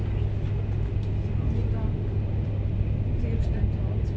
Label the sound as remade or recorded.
recorded